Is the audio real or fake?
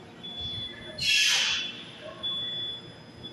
real